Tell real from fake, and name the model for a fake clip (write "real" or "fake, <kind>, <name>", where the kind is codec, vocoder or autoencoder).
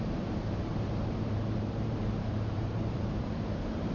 fake, vocoder, BigVGAN v2